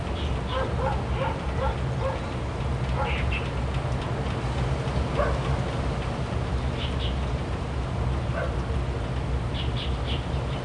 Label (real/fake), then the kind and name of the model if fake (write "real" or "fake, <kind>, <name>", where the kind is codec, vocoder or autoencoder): real